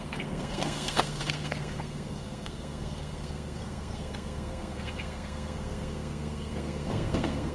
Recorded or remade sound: remade